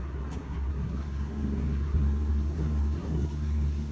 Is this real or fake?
fake